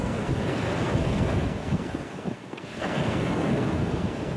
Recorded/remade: remade